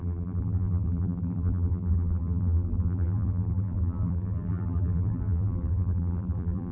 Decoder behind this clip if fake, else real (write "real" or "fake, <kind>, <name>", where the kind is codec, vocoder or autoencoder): fake, vocoder, BigVGAN v2